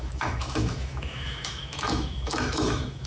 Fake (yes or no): yes